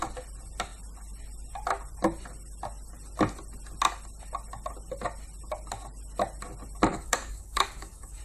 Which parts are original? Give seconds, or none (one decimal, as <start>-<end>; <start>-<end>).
0.0-6.9